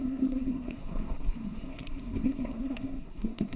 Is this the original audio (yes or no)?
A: no